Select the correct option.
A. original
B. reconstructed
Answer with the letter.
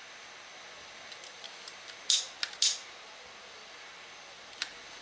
A